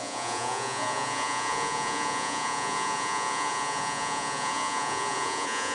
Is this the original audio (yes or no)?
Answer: no